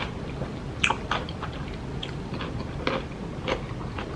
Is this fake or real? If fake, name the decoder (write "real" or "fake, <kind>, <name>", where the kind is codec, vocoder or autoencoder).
real